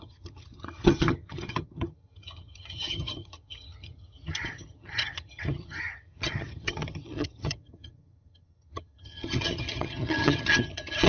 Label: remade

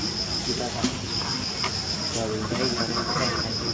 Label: recorded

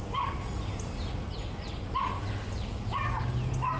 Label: recorded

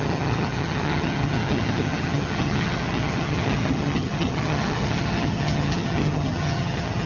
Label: remade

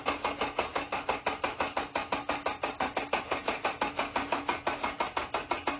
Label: recorded